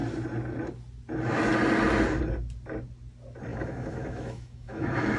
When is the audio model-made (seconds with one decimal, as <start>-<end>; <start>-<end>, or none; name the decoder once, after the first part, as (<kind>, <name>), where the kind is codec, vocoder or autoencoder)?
3.5-5.2 (autoencoder, DAC-VAE)